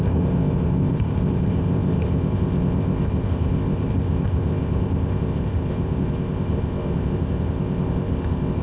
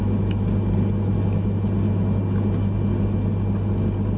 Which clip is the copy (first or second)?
first